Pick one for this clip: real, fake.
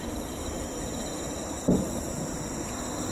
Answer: real